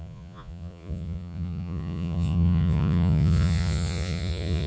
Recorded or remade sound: remade